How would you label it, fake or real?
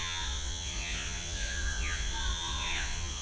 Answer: fake